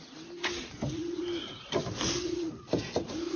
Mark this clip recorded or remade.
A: recorded